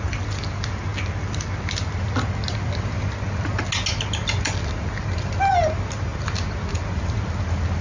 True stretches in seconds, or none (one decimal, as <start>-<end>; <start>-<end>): 0.0-7.8